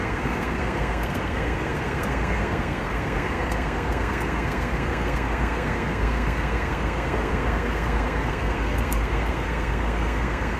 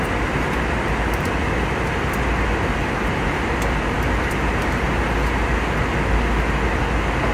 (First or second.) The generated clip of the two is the first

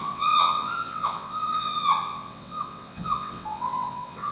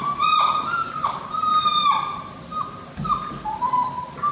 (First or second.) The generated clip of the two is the first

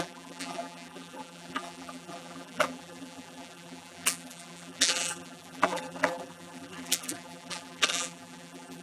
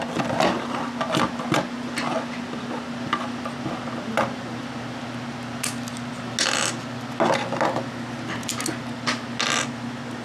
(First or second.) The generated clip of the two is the first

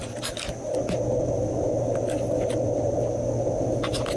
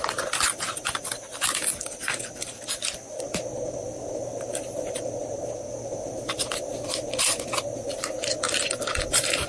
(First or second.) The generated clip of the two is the second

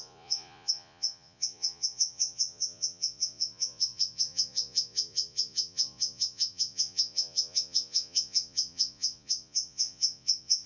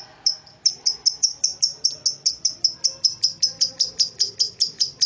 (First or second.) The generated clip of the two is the first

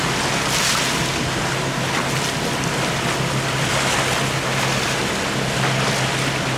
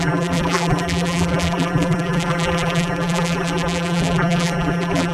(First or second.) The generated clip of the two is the second